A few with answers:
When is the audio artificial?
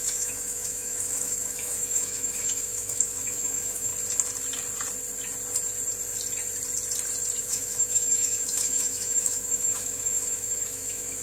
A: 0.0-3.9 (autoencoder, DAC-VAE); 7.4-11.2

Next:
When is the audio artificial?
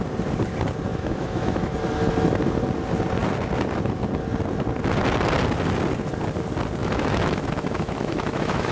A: 0.9-1.7 (autoencoder, DAC-VAE); 6.8-8.7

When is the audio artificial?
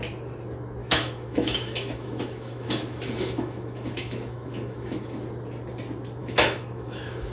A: 0.8-5.2 (autoencoder, DAC-VAE); 6.2-7.3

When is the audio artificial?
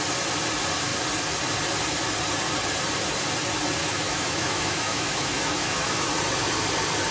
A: 3.8-6.1 (autoencoder, DAC-VAE)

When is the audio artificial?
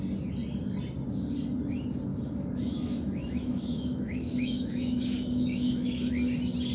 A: 2.1-6.1 (autoencoder, DAC-VAE)